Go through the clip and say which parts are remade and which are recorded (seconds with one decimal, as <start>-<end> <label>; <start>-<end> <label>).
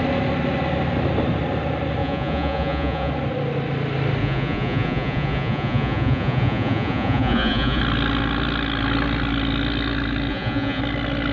0.0-2.0 recorded; 2.0-3.1 remade; 3.1-4.2 recorded; 4.2-7.8 remade; 7.8-10.3 recorded; 10.3-10.8 remade; 10.8-11.3 recorded